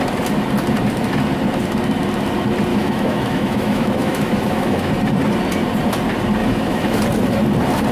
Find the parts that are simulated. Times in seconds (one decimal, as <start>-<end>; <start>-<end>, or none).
2.7-4.9; 6.4-7.0